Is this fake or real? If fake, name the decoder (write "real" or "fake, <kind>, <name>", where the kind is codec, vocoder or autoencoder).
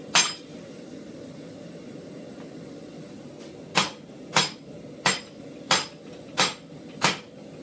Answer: fake, vocoder, BigVGAN v2